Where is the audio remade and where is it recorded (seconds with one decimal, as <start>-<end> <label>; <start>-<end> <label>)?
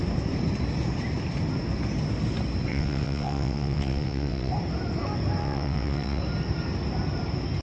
0.0-2.7 recorded; 2.7-4.5 remade; 4.5-5.4 recorded; 5.4-6.2 remade; 6.2-7.6 recorded